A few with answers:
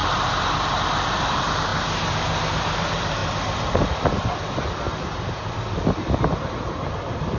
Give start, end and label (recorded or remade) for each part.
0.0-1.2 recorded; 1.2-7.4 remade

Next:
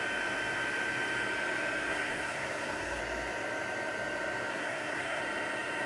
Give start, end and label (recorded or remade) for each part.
0.0-1.9 recorded; 1.9-3.0 remade; 3.0-4.5 recorded; 4.5-5.2 remade; 5.2-5.9 recorded

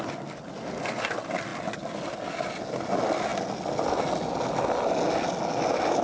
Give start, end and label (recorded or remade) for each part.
0.0-6.0 recorded

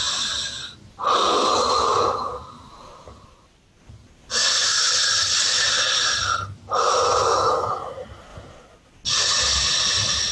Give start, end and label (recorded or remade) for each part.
0.0-10.3 recorded

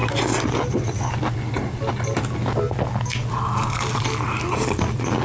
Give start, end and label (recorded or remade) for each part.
0.0-5.2 recorded

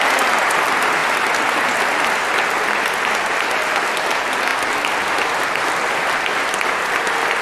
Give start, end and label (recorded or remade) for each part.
0.0-7.4 recorded

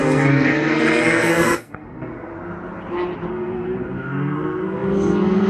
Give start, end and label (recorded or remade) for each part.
0.0-2.3 remade; 2.3-3.3 recorded; 3.3-5.5 remade